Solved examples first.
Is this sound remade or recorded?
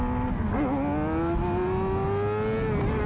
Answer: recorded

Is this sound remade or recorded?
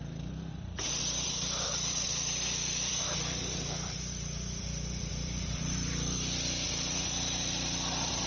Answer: remade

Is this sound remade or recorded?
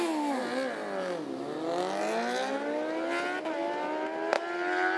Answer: recorded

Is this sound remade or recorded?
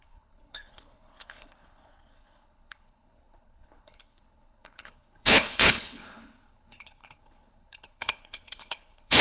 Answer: remade